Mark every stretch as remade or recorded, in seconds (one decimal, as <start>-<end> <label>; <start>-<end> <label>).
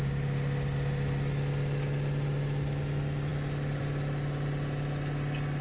0.0-5.6 recorded